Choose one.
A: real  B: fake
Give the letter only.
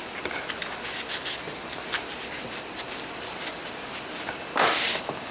A